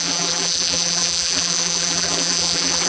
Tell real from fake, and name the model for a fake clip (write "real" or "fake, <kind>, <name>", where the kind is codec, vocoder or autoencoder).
fake, vocoder, BigVGAN v2